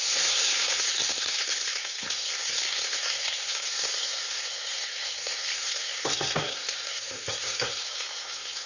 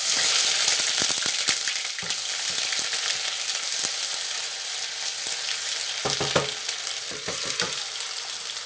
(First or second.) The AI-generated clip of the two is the first